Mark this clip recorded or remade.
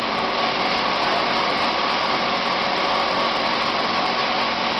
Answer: recorded